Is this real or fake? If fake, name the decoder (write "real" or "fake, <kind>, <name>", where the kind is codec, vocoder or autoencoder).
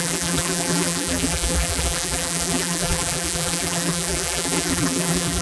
fake, vocoder, BigVGAN v2